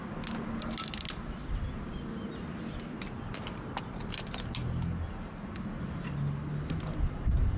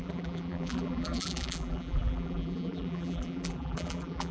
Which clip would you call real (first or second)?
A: first